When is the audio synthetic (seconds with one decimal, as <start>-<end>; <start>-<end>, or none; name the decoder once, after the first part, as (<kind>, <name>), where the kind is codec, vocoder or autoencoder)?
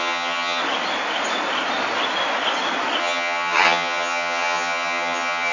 0.0-0.6 (vocoder, HiFi-GAN); 3.0-5.5